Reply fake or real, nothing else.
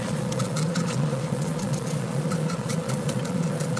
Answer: fake